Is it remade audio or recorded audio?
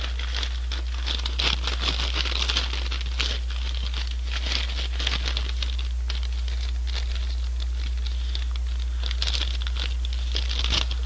recorded